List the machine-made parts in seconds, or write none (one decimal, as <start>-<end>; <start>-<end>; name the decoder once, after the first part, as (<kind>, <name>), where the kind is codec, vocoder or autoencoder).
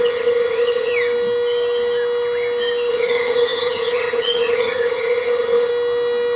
0.0-0.9 (vocoder, HiFi-GAN); 2.9-5.7